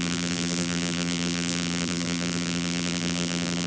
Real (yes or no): no